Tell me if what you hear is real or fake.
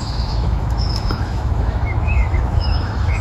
fake